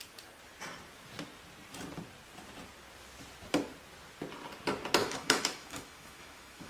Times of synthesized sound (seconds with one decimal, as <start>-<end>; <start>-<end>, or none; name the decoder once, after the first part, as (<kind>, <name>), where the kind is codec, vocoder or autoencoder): 5.0-6.7 (autoencoder, DAC-VAE)